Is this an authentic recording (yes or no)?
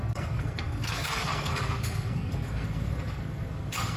no